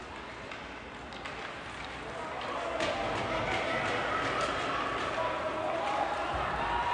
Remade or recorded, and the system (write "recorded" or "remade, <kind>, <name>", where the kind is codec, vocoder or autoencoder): recorded